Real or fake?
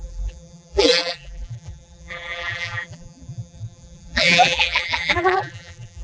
fake